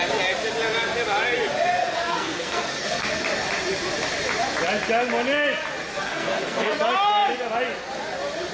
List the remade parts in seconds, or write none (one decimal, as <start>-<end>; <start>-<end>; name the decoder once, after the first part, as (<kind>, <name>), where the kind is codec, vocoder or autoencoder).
1.8-3.2 (codec, SNAC); 5.9-6.8

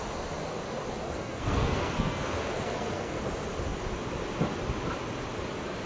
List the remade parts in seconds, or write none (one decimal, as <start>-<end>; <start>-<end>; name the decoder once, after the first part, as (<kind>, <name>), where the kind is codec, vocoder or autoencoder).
1.0-3.2 (codec, SNAC)

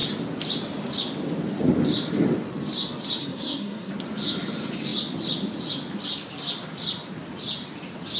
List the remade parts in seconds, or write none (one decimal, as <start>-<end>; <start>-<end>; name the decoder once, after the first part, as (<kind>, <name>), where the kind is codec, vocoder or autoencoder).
3.2-3.9 (codec, SNAC)

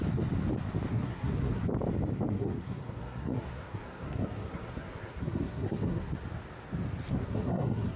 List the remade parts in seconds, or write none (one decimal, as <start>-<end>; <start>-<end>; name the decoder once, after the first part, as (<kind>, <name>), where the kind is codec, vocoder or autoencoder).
0.9-1.6 (codec, SNAC); 2.3-6.1; 7.1-8.0

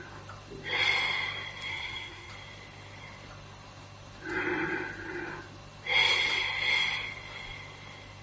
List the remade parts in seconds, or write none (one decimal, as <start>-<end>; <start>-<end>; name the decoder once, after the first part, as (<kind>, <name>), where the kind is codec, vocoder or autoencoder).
1.7-2.3 (codec, SNAC)

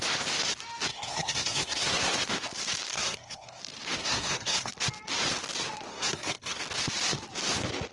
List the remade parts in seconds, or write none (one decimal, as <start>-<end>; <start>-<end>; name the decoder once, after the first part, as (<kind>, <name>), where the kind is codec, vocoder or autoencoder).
0.9-2.1 (codec, SNAC); 2.9-3.6; 4.0-4.7; 5.9-6.6

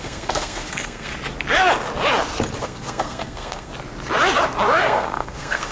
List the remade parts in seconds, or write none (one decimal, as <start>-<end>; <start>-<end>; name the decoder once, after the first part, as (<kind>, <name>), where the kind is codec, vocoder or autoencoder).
0.0-1.1 (codec, SNAC); 2.6-3.7; 4.8-5.7

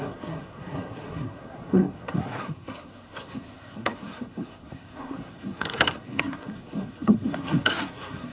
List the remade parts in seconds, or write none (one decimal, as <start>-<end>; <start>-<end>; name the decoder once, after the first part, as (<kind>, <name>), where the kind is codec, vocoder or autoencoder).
0.0-8.3 (codec, SNAC)